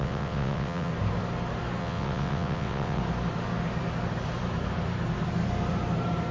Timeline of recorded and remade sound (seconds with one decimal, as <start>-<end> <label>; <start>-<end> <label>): 0.0-0.9 remade; 0.9-1.8 recorded; 1.8-3.0 remade; 3.0-6.3 recorded